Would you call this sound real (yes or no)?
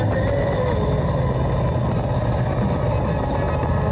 yes